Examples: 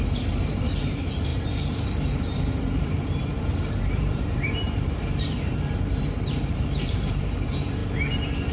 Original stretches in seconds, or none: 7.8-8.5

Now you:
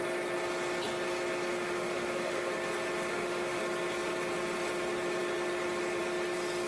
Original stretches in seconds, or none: 0.0-1.5; 2.5-3.1; 3.6-6.7

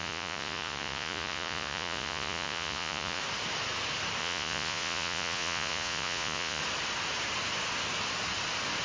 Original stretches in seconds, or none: 3.2-4.2; 6.6-8.8